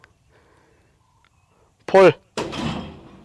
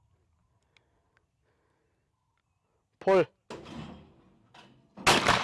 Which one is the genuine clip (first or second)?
second